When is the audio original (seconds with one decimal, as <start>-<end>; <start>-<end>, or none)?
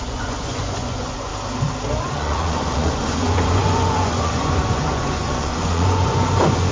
1.3-2.0